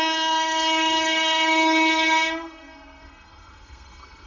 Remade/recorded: remade